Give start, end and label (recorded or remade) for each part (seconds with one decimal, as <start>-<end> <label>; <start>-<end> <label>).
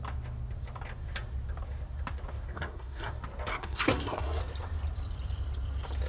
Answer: 0.0-2.5 recorded; 2.5-3.1 remade; 3.1-3.5 recorded; 3.5-4.4 remade; 4.4-6.1 recorded